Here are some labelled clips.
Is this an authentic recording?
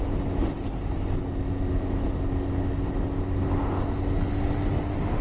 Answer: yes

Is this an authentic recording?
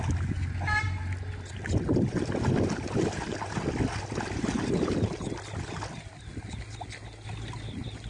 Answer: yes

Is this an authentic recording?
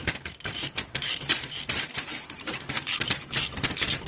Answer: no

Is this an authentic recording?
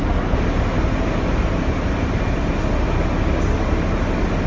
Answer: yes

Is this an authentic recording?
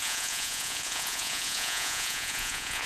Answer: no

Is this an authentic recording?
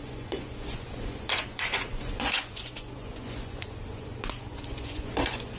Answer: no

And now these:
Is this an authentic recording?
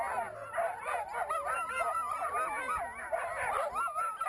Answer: yes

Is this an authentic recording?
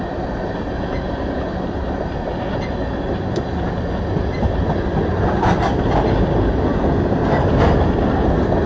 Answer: yes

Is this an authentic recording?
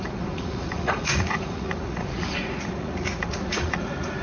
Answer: no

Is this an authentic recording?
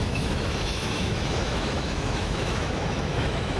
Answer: no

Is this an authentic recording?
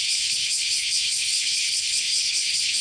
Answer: no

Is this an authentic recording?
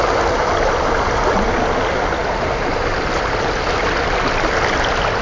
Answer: yes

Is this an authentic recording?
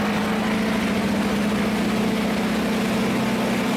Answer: yes